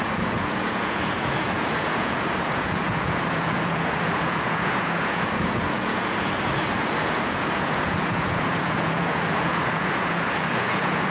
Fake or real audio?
fake